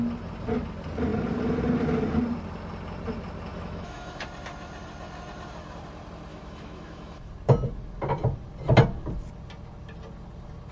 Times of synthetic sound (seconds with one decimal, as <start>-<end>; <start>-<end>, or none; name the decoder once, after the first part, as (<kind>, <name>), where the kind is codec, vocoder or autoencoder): 3.5-4.2 (autoencoder, DAC-VAE); 6.3-7.3